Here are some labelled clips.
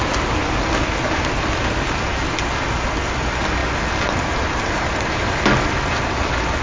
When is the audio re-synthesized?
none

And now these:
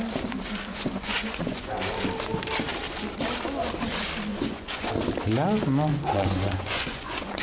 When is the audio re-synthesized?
0.7-1.7; 4.3-4.9; 5.9-7.4

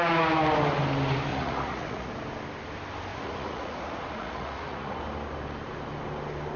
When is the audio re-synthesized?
1.3-2.1; 3.1-5.0

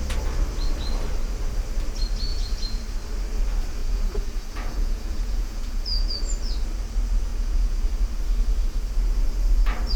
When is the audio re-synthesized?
2.3-2.8; 3.8-6.2; 7.3-7.9

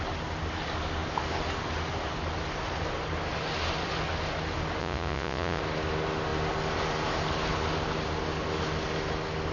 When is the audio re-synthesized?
4.8-5.6

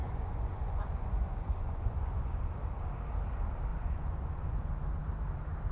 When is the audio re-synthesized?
0.0-2.4; 3.7-4.7

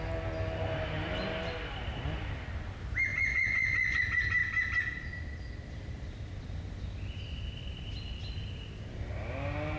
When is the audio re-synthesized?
3.1-4.0